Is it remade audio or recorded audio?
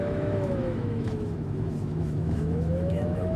remade